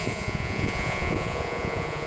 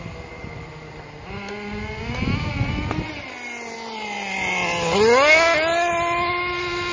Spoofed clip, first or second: first